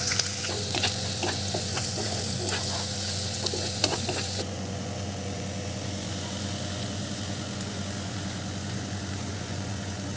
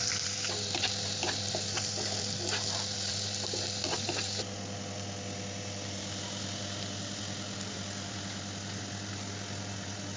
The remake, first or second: first